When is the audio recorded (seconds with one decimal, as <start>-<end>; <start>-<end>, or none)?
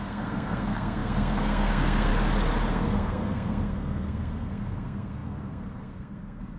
2.1-2.7